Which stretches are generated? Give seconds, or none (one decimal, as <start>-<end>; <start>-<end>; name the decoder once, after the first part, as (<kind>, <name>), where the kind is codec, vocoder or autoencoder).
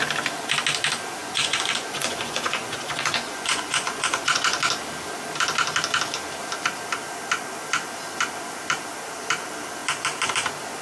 1.2-4.6 (vocoder, Vocos)